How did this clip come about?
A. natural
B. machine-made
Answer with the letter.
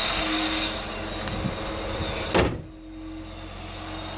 A